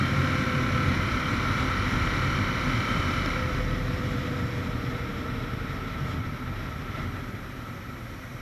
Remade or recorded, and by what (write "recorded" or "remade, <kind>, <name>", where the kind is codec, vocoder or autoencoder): recorded